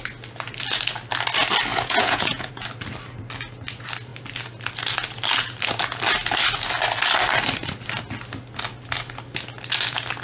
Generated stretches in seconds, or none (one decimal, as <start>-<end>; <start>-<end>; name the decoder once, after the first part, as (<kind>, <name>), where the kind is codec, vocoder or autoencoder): 1.7-2.5 (vocoder, Vocos)